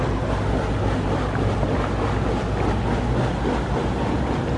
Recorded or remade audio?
recorded